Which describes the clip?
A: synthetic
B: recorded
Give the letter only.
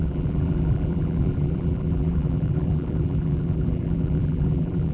A